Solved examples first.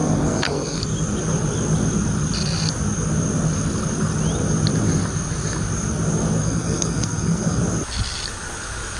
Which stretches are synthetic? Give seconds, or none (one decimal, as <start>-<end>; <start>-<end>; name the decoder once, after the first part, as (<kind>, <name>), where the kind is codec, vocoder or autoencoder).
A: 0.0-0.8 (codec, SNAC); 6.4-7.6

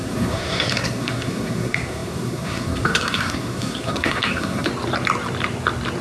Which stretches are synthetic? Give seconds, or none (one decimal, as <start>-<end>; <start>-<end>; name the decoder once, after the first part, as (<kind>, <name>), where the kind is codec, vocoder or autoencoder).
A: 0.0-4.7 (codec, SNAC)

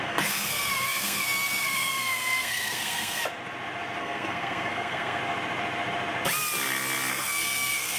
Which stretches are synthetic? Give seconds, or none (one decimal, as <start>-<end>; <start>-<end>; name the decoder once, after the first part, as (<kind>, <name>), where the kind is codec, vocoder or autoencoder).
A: 0.0-3.2 (codec, SNAC); 4.0-5.2; 7.1-8.0

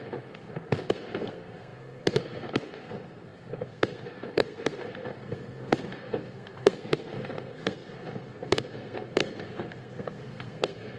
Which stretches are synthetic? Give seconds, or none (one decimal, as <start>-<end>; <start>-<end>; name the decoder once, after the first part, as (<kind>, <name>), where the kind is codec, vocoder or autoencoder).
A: 0.0-11.0 (codec, SNAC)

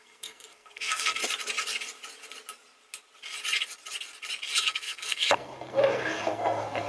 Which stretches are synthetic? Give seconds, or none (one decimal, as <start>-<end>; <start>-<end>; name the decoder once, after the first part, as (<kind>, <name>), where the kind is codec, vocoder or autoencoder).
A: 0.0-1.2 (codec, SNAC); 4.6-6.9

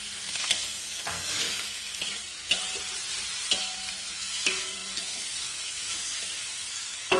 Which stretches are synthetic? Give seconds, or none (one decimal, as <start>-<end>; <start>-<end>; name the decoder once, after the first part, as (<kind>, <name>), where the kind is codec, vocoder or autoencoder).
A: 0.0-2.6 (codec, SNAC); 3.6-7.2